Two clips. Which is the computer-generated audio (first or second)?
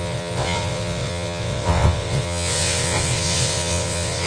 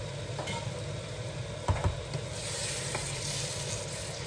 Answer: first